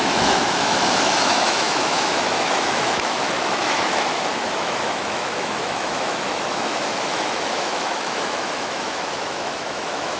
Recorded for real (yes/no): no